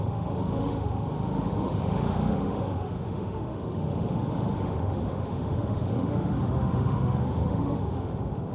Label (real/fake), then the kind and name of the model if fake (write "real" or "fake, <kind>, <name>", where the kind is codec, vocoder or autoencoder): fake, autoencoder, DAC-VAE